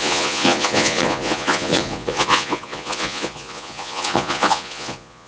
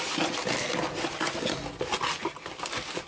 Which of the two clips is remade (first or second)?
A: first